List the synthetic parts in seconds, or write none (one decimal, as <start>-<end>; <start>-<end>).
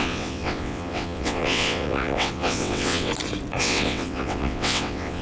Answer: 0.0-3.1; 3.6-5.2